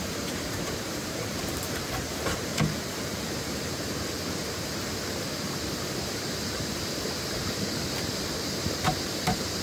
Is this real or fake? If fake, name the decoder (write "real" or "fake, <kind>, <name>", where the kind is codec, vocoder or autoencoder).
fake, vocoder, BigVGAN v2